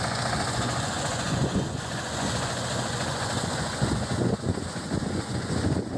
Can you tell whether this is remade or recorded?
remade